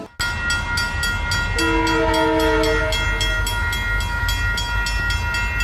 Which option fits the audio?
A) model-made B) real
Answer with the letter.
B